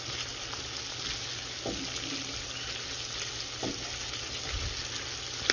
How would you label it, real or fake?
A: real